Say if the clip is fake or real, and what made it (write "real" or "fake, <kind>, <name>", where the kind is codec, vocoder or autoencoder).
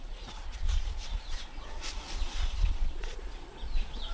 fake, vocoder, Vocos